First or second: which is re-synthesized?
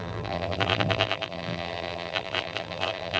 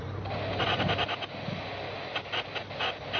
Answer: first